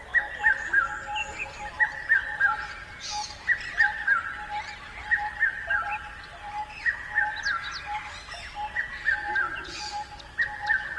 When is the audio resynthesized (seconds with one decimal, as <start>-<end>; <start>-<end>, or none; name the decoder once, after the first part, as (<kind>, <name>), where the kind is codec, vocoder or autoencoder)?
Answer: 1.2-1.8 (vocoder, BigVGAN v2); 2.2-2.9; 5.9-6.8